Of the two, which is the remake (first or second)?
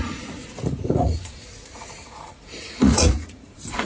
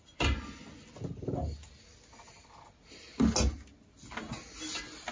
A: first